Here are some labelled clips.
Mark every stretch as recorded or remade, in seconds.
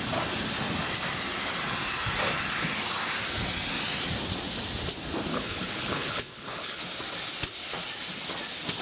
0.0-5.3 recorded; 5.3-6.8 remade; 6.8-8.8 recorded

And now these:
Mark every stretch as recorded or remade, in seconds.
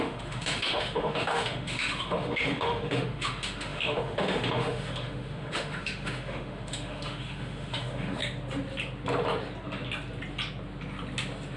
0.0-8.2 remade; 8.2-11.6 recorded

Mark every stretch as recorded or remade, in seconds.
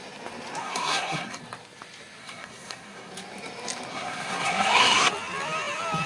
0.0-0.6 recorded; 0.6-1.4 remade; 1.4-2.2 recorded; 2.2-3.1 remade; 3.1-3.9 recorded; 3.9-5.1 remade; 5.1-6.1 recorded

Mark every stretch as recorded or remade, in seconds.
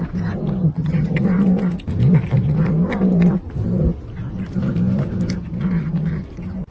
0.0-0.6 recorded; 0.6-1.2 remade; 1.2-6.7 recorded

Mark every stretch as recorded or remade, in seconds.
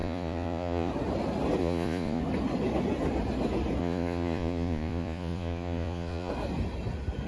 0.0-0.9 remade; 0.9-1.6 recorded; 1.6-2.2 remade; 2.2-3.8 recorded; 3.8-6.3 remade; 6.3-7.3 recorded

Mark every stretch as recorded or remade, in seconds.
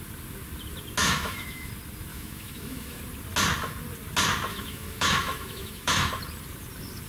0.0-1.0 recorded; 1.0-1.7 remade; 1.7-2.1 recorded; 2.1-3.0 remade; 3.0-4.5 recorded; 4.5-6.1 remade; 6.1-7.1 recorded